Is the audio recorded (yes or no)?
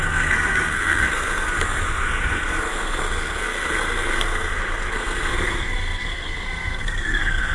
no